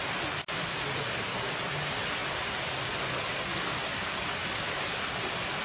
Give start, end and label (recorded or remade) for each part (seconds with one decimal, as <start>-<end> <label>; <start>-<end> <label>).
0.0-5.6 recorded